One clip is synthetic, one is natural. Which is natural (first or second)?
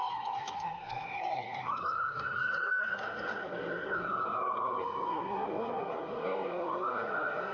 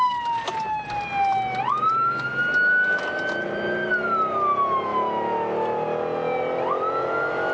second